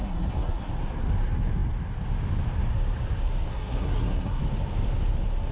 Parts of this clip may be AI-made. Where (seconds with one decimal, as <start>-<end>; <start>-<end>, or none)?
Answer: 0.0-0.7; 3.5-4.4

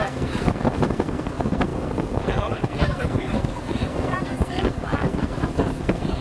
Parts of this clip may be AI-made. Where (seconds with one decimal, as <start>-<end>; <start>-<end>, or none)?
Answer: 0.0-6.2